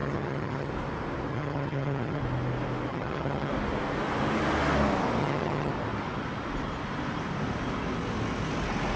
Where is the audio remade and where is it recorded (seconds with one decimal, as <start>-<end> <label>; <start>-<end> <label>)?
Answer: 0.0-0.7 remade; 0.7-1.3 recorded; 1.3-2.2 remade; 2.2-2.9 recorded; 2.9-3.5 remade; 3.5-5.2 recorded; 5.2-5.7 remade; 5.7-9.0 recorded